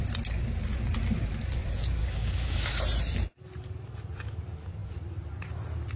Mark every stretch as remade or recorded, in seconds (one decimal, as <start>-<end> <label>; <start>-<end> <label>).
0.0-2.0 recorded; 2.0-2.8 remade; 2.8-6.0 recorded